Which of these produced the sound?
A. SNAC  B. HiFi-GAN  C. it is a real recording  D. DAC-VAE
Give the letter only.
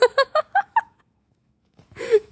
D